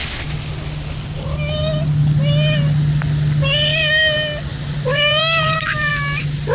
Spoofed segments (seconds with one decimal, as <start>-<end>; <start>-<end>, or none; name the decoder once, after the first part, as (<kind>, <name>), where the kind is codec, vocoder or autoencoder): 4.5-5.9 (vocoder, BigVGAN v2)